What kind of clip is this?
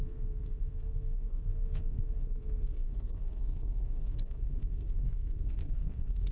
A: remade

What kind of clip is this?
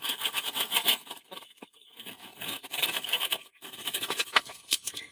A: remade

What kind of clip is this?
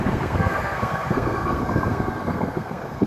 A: remade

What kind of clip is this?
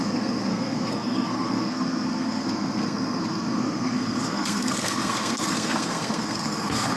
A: remade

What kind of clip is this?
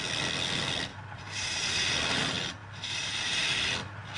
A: recorded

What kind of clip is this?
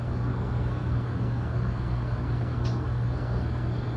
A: remade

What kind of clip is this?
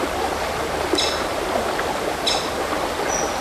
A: recorded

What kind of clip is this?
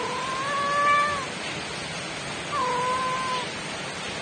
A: recorded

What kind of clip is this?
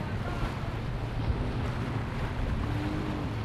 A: recorded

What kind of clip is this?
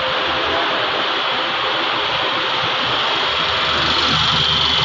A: recorded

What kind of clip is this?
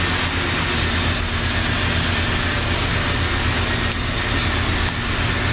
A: recorded